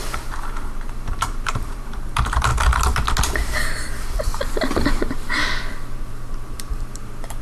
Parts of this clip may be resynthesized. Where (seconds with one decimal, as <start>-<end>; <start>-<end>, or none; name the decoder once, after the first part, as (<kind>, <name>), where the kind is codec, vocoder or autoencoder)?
0.0-2.5 (vocoder, BigVGAN v2); 3.2-4.3; 6.0-7.4